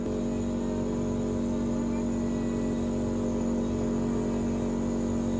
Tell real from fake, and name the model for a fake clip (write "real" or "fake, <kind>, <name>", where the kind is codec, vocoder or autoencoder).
real